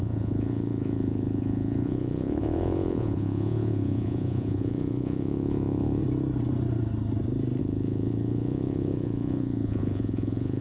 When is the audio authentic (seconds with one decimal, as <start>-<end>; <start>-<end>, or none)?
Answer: 6.0-7.6